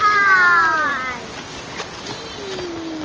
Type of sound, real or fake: real